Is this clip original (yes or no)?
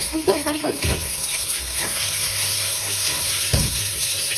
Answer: no